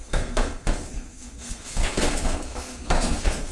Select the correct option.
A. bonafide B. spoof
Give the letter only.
B